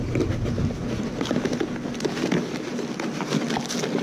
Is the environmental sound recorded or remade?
recorded